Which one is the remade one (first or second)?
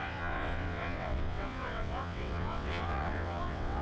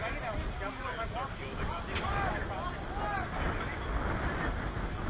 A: first